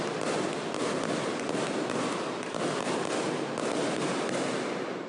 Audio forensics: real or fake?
real